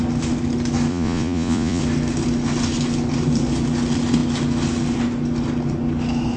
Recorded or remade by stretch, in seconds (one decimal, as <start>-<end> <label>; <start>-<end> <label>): 0.0-0.9 recorded; 0.9-1.8 remade; 1.8-6.4 recorded